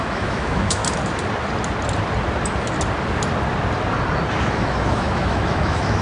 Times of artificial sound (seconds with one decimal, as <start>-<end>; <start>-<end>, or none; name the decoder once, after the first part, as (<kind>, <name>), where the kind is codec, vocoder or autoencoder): 0.0-0.8 (autoencoder, DAC-VAE); 4.4-6.0